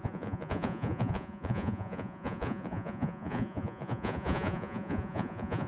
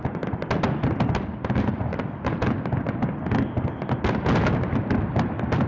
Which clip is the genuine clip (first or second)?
second